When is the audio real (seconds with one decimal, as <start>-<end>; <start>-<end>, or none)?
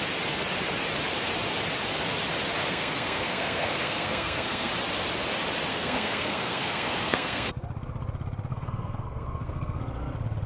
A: 0.0-2.6; 4.7-5.7; 7.5-8.5; 9.8-10.5